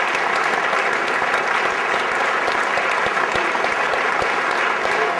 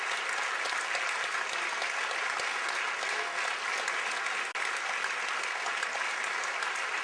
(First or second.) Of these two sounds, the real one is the second